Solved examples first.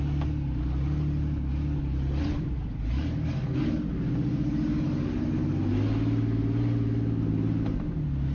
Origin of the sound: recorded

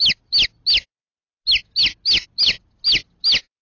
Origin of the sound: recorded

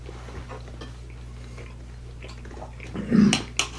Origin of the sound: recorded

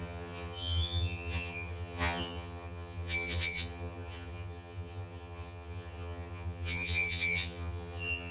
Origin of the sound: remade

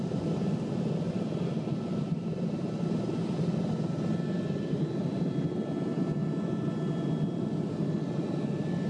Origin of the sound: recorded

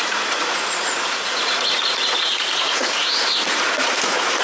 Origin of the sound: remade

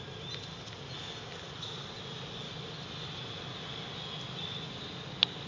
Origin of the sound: recorded